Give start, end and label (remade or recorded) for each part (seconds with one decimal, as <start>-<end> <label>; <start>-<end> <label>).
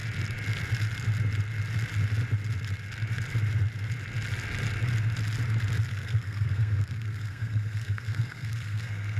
0.0-5.9 recorded; 5.9-9.2 remade